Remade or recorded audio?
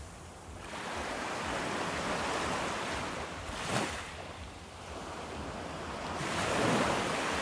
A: recorded